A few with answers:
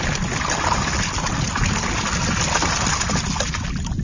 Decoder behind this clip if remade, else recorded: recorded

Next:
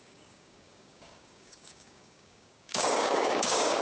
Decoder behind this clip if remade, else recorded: remade, codec, DAC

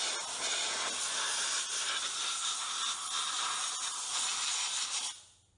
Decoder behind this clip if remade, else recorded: recorded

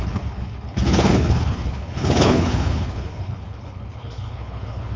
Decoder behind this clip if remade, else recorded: remade, codec, HILCodec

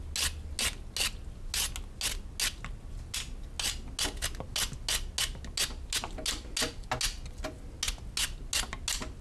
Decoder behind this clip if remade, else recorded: recorded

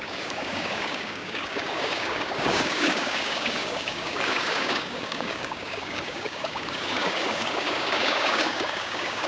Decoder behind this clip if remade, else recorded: remade, codec, DAC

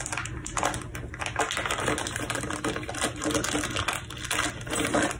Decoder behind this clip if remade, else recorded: recorded